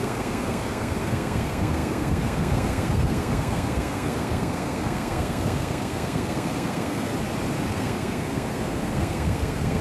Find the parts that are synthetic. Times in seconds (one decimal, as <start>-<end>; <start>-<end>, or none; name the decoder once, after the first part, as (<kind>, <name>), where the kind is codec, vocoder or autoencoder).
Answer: 0.0-7.1 (codec, SNAC); 7.7-9.8